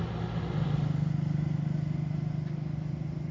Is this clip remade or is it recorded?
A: recorded